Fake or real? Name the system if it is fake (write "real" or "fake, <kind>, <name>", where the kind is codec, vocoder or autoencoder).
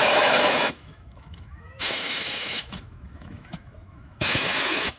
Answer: fake, autoencoder, DAC-VAE